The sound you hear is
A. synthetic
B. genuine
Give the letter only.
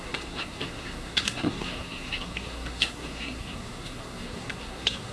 A